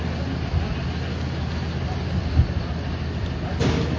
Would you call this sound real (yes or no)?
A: yes